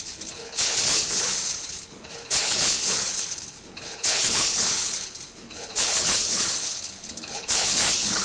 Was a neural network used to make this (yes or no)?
yes